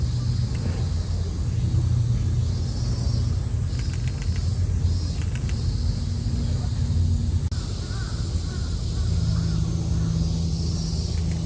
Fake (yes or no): no